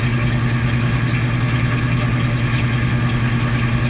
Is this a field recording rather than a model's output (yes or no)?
yes